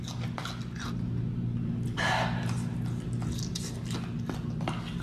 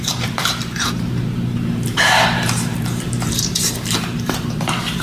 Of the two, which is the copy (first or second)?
second